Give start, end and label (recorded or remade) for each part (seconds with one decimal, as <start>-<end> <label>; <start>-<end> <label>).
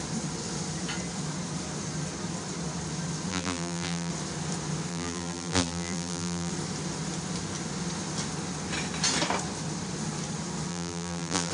0.0-3.3 recorded; 3.3-4.1 remade; 4.1-4.9 recorded; 4.9-6.5 remade; 6.5-10.7 recorded; 10.7-11.5 remade